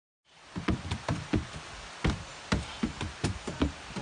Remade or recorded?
recorded